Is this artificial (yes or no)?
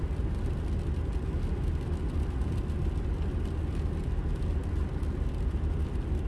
no